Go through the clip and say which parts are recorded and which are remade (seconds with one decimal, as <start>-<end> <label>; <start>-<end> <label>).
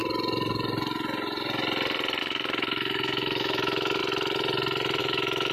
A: 0.0-2.2 recorded; 2.2-4.0 remade; 4.0-5.0 recorded; 5.0-5.5 remade